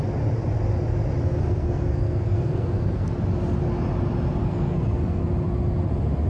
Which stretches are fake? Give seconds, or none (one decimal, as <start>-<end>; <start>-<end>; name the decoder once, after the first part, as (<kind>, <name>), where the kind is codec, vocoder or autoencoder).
1.2-3.1 (codec, SNAC); 4.4-5.2

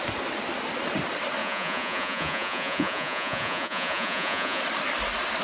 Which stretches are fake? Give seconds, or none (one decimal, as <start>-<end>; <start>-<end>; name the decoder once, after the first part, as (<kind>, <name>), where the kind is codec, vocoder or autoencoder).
1.4-4.6 (vocoder, Vocos)

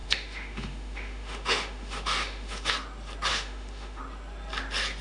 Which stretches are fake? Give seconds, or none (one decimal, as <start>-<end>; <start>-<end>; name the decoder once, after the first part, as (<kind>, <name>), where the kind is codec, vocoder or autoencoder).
0.0-2.7 (autoencoder, DAC-VAE); 3.3-4.0

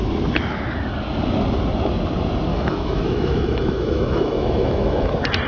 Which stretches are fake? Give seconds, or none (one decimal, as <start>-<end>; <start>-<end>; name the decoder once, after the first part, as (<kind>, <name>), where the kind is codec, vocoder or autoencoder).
2.5-5.1 (autoencoder, DAC-VAE)

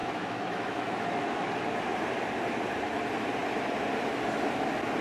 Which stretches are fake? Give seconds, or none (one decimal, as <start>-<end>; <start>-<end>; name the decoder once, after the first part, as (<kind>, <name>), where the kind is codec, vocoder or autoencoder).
0.0-1.5 (autoencoder, DAC-VAE)

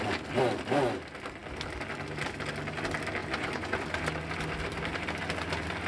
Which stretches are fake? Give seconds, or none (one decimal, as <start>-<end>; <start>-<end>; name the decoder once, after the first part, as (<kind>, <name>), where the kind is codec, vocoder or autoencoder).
3.2-4.0 (vocoder, Vocos)

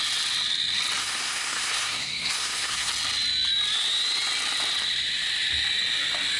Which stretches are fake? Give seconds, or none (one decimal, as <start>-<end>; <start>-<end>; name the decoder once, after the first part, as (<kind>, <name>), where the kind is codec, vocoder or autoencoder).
1.0-2.9 (codec, SNAC)

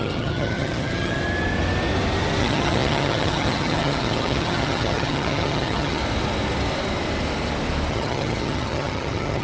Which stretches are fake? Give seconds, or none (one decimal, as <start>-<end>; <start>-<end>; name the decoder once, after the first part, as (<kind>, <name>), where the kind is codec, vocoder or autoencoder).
0.0-1.2 (vocoder, HiFi-GAN); 2.4-6.0; 7.9-9.4